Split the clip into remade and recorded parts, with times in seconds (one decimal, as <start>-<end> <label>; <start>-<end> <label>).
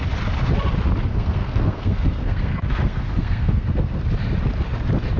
0.0-1.1 recorded; 1.1-4.0 remade; 4.0-5.2 recorded